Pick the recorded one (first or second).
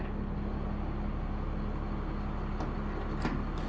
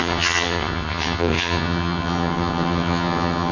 first